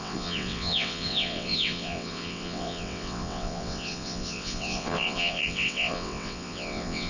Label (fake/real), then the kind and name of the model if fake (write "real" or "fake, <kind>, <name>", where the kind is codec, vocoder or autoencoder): fake, vocoder, WaveNeXt